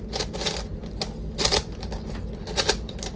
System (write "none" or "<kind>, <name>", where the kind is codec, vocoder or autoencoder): none